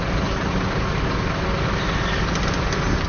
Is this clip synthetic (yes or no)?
no